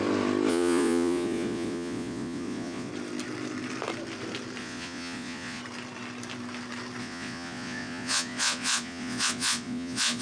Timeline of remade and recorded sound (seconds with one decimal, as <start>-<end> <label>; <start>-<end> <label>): 0.0-0.5 recorded; 0.5-2.9 remade; 2.9-4.6 recorded; 4.6-5.6 remade; 5.6-7.0 recorded; 7.0-10.2 remade